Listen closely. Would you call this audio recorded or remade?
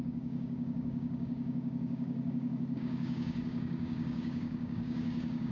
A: remade